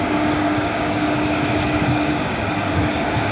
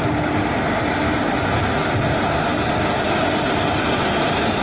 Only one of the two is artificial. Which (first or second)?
first